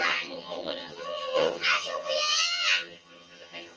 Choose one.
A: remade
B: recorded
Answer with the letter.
A